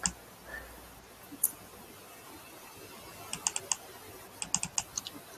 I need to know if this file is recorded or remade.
recorded